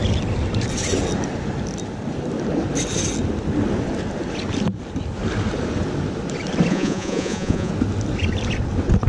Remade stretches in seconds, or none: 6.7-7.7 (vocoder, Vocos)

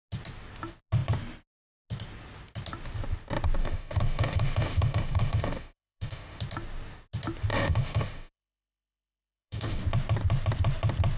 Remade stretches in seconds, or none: 3.6-6.4 (autoencoder, DAC-VAE); 7.5-9.8

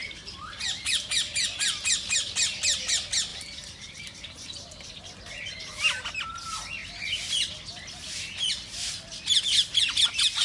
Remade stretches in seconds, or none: 0.0-1.8 (vocoder, BigVGAN v2); 3.3-5.0

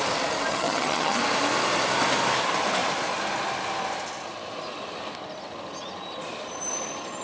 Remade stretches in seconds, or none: 0.5-1.2 (vocoder, HiFi-GAN)